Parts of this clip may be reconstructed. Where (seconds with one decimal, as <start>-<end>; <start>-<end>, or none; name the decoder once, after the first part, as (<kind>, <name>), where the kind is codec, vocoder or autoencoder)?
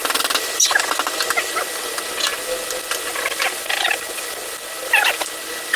none